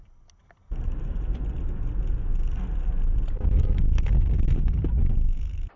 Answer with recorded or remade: recorded